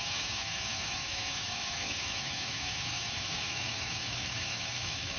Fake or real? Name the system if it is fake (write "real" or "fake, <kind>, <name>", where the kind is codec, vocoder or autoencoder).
fake, autoencoder, DAC-VAE